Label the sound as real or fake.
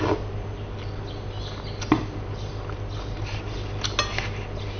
real